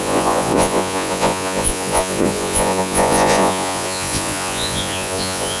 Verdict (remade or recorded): remade